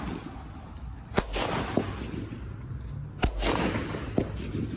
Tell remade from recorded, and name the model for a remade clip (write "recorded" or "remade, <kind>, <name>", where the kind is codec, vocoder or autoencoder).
recorded